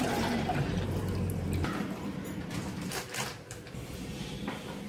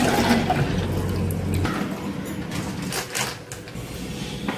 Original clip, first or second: second